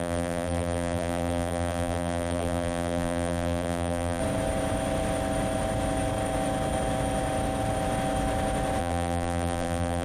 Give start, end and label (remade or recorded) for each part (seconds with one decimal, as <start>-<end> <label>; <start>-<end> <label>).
0.0-4.2 remade; 4.2-8.8 recorded; 8.8-10.0 remade